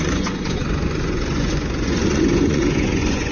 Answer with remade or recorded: remade